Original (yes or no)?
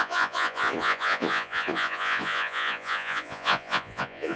no